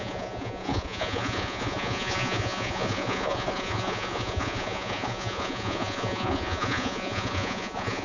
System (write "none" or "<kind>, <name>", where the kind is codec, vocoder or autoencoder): vocoder, Vocos